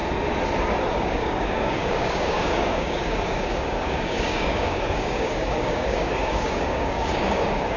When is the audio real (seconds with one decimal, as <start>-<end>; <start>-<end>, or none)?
0.0-0.9